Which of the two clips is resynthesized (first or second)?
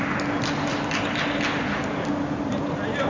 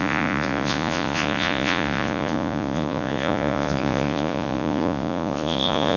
second